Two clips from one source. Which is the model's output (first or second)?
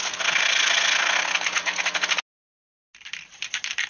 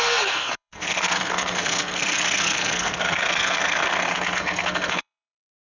second